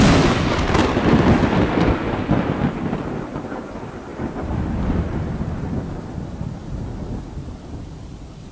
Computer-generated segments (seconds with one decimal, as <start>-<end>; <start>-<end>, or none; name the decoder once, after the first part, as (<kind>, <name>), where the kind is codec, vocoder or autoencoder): 0.0-8.5 (vocoder, BigVGAN v2)